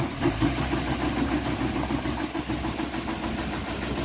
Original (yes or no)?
yes